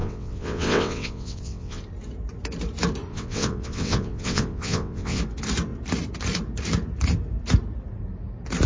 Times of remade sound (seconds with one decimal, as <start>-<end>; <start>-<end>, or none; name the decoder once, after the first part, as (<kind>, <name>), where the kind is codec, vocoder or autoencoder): 0.0-1.8 (vocoder, WaveNeXt); 3.1-5.2